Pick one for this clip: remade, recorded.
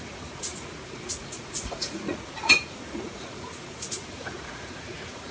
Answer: remade